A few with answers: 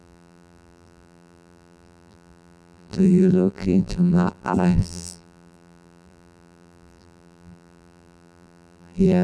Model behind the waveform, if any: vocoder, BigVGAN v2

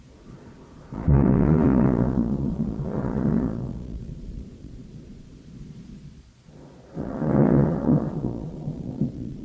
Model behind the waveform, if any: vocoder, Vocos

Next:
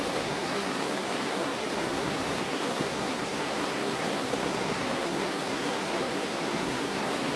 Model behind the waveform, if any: codec, SNAC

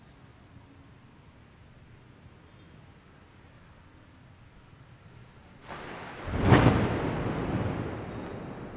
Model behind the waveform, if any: none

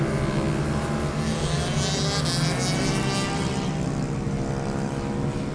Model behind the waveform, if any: none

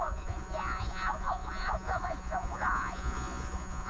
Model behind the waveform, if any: vocoder, Vocos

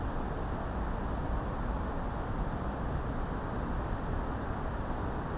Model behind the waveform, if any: none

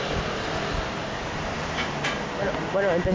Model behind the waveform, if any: none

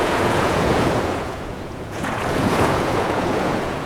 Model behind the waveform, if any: vocoder, Vocos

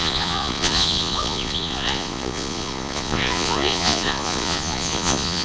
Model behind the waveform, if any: vocoder, Vocos